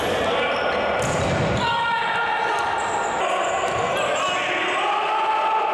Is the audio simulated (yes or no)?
no